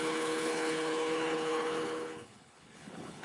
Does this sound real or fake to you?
fake